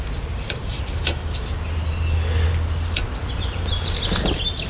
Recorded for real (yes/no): yes